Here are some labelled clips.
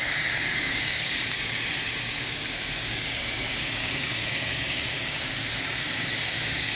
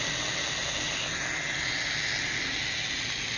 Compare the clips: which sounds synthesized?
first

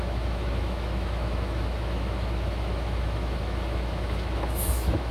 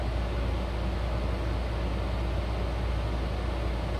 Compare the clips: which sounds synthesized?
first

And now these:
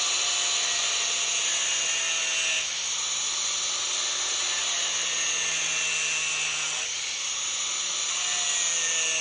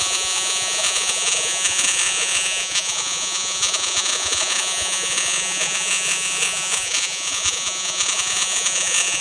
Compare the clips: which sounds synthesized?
second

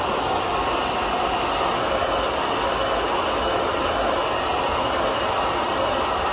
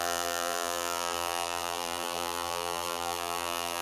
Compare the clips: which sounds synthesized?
second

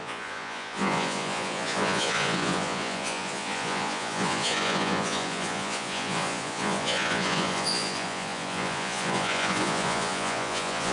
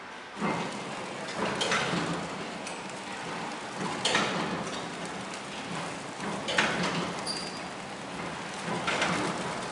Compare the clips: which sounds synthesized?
first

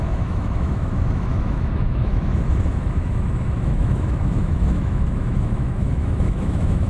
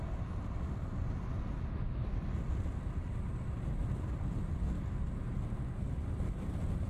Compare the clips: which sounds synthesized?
first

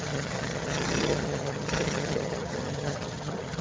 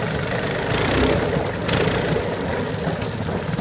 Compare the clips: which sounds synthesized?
first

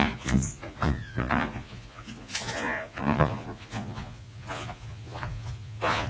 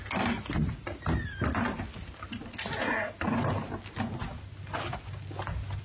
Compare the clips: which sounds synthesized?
first